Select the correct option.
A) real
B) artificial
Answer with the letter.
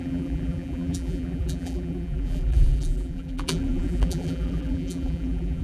B